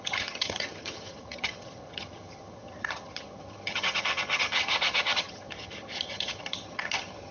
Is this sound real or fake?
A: fake